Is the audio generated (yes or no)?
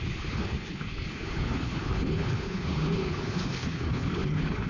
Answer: yes